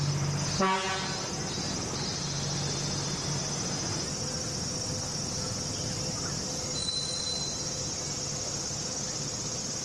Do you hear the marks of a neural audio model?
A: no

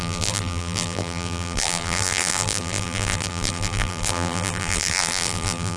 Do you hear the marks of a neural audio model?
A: yes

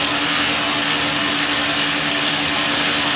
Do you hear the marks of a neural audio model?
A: no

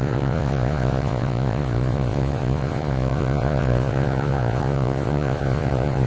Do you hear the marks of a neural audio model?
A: yes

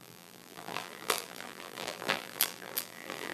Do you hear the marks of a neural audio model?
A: yes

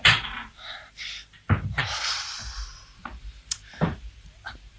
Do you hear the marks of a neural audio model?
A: yes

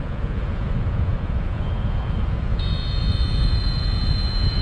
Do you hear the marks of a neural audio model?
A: yes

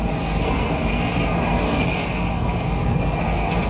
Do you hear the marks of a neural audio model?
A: yes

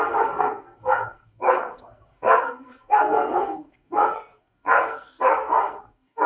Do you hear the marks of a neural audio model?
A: yes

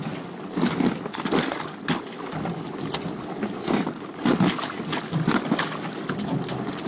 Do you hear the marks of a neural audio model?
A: no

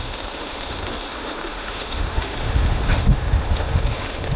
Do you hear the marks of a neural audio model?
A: yes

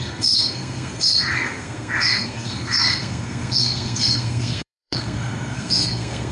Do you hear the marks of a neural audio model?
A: yes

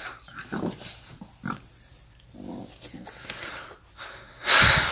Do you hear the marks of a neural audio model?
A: no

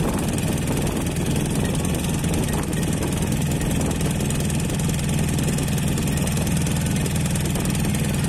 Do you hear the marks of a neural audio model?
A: no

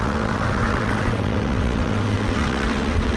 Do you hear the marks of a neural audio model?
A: yes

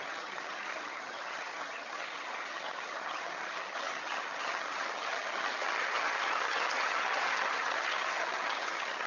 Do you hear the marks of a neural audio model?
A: yes